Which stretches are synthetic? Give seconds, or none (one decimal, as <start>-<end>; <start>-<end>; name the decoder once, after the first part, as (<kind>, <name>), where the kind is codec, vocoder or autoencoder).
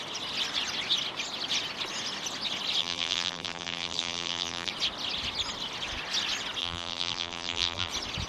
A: 2.8-4.7 (vocoder, BigVGAN v2); 6.6-7.9